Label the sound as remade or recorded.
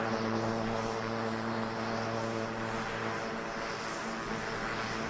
recorded